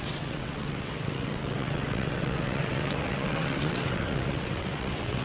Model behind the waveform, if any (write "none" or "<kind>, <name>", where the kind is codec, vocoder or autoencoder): vocoder, WaveNeXt